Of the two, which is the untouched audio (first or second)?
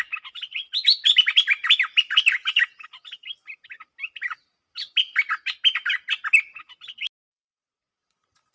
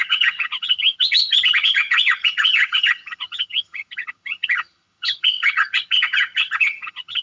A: first